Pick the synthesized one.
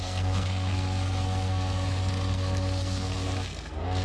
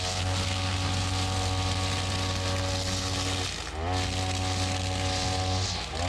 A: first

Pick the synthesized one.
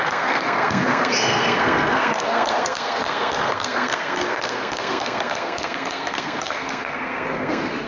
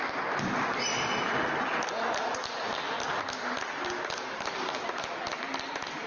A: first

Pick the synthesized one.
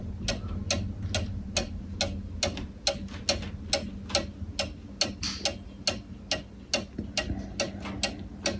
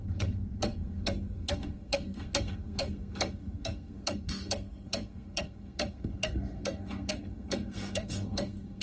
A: second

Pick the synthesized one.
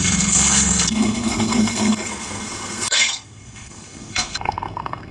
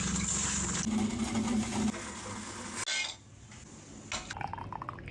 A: first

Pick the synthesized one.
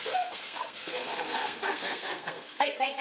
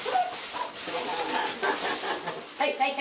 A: first